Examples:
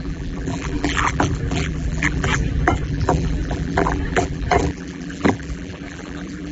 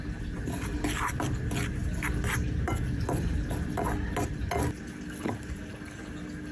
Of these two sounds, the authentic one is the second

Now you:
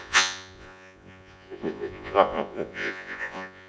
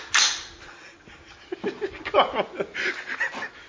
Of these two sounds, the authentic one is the second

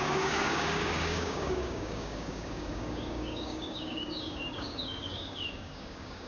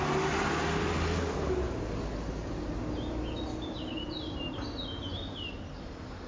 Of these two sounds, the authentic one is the second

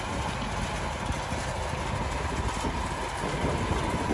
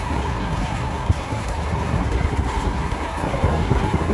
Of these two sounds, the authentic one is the first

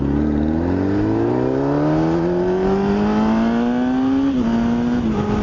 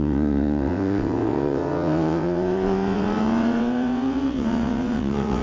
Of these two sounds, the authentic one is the first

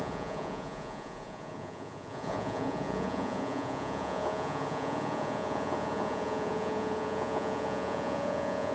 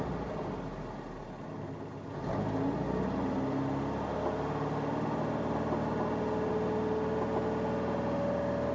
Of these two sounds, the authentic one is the second